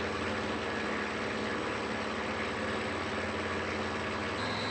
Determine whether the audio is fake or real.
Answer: real